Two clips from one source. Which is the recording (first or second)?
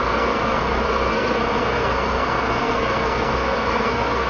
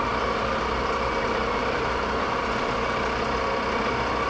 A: second